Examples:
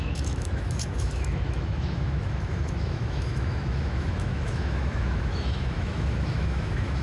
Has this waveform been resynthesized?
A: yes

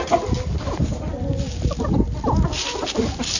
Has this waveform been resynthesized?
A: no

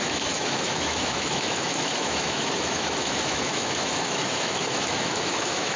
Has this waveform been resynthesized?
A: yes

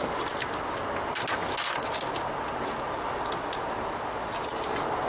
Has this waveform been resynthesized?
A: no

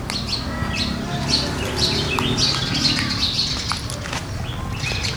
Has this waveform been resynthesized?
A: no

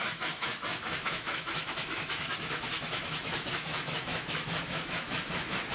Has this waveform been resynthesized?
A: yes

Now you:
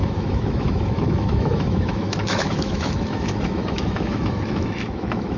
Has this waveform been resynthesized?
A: yes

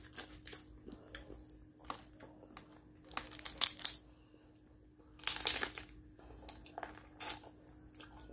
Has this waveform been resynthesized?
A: no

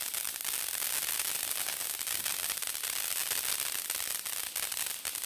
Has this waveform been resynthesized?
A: no